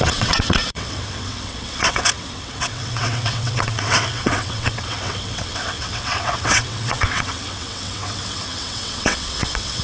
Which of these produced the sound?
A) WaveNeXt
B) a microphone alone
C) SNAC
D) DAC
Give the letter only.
A